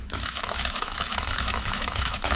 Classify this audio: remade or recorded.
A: remade